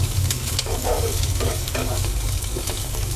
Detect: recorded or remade remade